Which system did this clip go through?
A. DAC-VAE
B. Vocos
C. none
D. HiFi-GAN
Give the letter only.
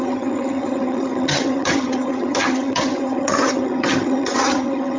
D